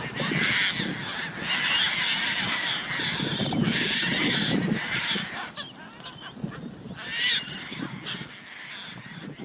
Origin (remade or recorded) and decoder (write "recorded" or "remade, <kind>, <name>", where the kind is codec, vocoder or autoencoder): recorded